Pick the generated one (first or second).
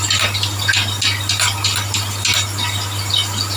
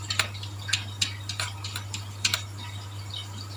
second